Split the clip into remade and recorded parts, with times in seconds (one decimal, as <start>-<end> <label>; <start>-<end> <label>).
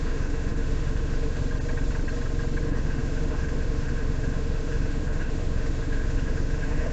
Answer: 0.0-1.4 remade; 1.4-2.6 recorded; 2.6-6.9 remade